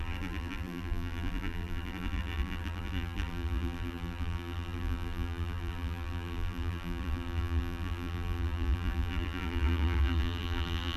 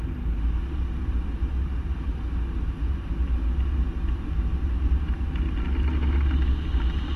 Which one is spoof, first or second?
first